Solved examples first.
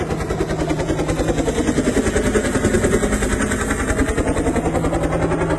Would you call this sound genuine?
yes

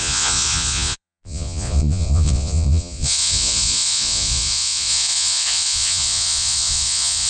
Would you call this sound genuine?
no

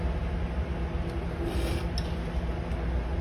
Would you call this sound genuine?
yes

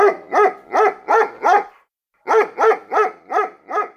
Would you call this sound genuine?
yes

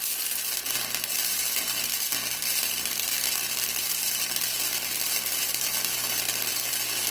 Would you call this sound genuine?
no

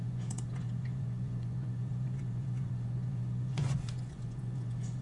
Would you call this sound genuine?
no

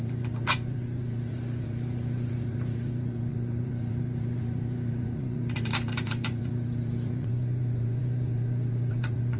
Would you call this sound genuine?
no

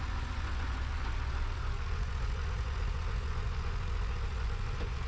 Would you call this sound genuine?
no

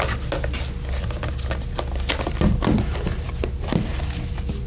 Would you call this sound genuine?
yes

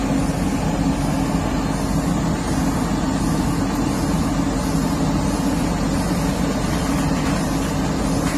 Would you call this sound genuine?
yes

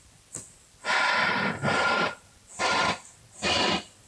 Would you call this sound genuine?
yes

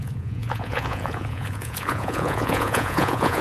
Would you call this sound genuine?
no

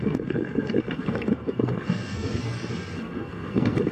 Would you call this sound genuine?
no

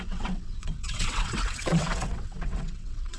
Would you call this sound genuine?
no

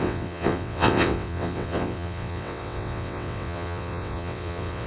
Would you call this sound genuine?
no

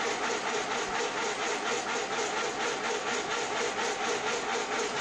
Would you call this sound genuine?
yes